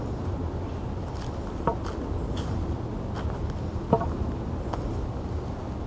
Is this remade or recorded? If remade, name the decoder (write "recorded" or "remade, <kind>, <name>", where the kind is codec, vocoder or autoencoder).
recorded